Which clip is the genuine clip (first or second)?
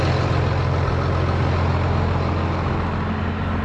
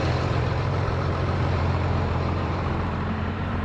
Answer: first